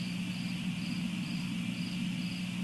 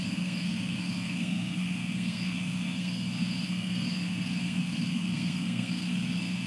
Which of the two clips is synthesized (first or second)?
second